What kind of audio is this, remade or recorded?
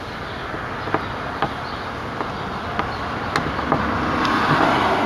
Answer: recorded